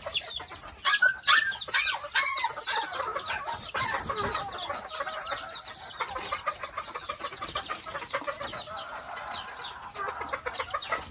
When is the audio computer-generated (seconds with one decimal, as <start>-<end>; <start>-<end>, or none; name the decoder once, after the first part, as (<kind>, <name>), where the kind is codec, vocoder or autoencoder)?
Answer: none